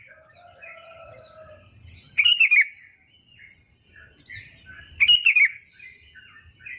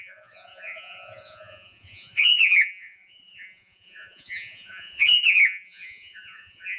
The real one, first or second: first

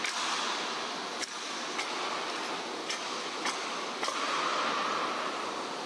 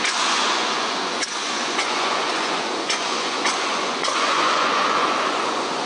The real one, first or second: first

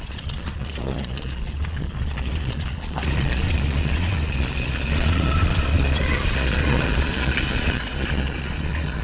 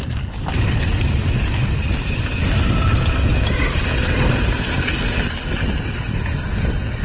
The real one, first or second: second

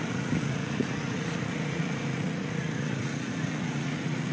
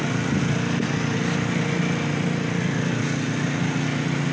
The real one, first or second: second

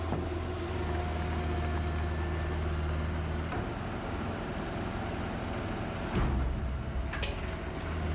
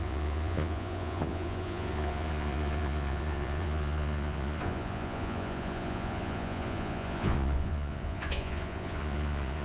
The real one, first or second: first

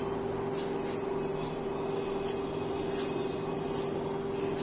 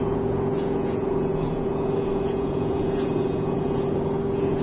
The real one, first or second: first